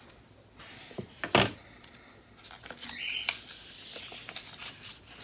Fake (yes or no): no